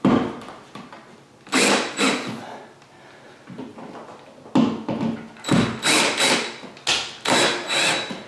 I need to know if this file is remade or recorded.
recorded